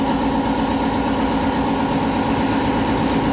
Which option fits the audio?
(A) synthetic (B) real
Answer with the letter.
B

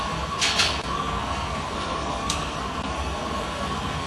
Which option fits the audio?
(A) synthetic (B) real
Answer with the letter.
A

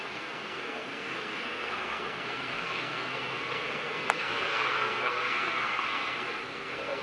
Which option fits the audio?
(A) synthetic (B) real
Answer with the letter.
A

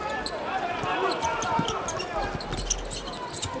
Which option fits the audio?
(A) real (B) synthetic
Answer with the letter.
A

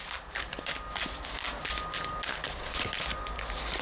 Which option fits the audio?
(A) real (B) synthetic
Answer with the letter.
A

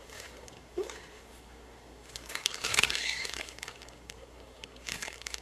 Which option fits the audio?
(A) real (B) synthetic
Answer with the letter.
B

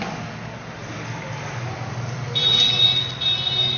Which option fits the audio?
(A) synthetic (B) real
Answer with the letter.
B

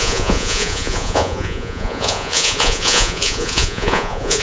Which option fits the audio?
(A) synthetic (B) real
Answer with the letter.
A